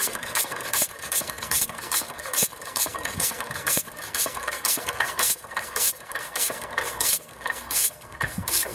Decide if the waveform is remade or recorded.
remade